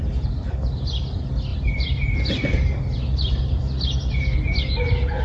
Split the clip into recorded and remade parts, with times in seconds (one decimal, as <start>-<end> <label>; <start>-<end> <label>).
0.0-5.2 recorded